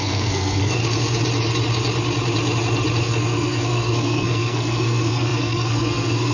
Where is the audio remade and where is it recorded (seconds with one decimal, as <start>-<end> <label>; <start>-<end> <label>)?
0.0-0.8 remade; 0.8-3.0 recorded; 3.0-6.3 remade